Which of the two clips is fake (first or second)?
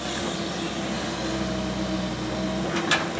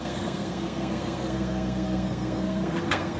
second